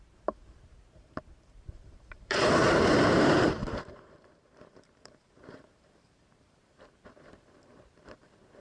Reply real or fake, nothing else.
fake